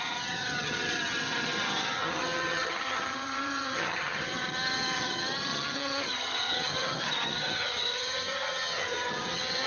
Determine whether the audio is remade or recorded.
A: remade